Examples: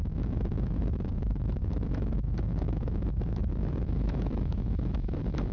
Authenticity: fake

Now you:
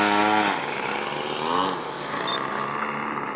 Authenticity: real